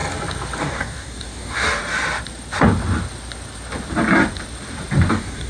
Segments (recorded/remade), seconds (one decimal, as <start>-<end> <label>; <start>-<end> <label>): 0.0-0.6 recorded; 0.6-1.8 remade; 1.8-5.1 recorded; 5.1-5.5 remade

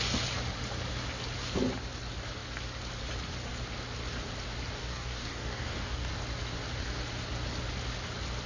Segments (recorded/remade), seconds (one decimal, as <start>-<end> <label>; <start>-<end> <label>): 0.0-4.8 recorded; 4.8-6.1 remade; 6.1-8.5 recorded

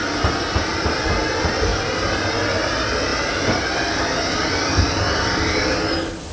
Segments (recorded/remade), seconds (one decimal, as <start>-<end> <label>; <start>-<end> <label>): 0.0-6.3 recorded

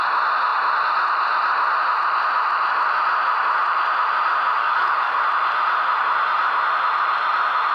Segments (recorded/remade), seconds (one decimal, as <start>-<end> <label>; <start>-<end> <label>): 0.0-4.6 recorded; 4.6-5.2 remade; 5.2-7.7 recorded

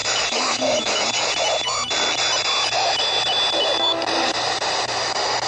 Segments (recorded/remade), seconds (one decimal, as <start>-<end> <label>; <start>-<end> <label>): 0.0-1.3 remade; 1.3-5.5 recorded

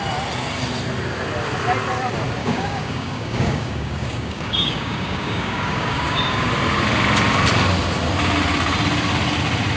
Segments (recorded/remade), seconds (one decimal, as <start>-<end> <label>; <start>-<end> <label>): 0.0-2.4 recorded; 2.4-6.5 remade; 6.5-9.8 recorded

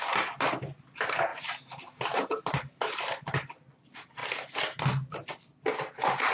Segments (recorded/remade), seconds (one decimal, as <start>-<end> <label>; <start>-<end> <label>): 0.0-6.3 recorded

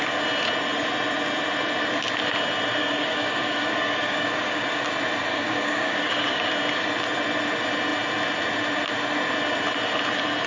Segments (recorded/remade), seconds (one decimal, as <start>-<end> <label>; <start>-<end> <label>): 0.0-2.8 recorded; 2.8-4.8 remade; 4.8-5.3 recorded; 5.3-6.5 remade; 6.5-10.5 recorded